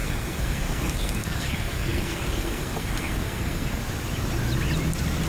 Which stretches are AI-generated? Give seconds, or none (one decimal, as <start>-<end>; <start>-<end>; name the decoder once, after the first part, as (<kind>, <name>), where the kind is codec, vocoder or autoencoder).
0.0-3.8 (codec, SNAC)